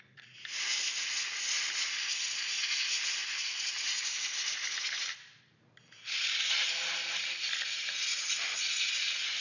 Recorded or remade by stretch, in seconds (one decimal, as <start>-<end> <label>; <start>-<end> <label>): 0.0-3.2 recorded; 3.2-5.4 remade; 5.4-9.4 recorded